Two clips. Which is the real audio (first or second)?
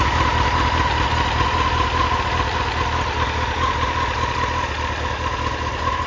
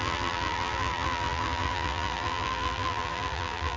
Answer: first